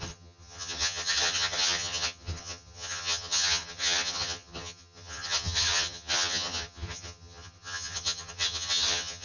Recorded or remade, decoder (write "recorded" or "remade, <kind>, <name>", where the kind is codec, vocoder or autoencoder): remade, vocoder, HiFi-GAN